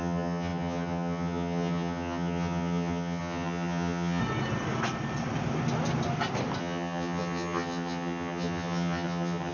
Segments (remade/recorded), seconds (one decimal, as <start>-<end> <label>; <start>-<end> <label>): 0.0-4.2 remade; 4.2-6.6 recorded; 6.6-9.5 remade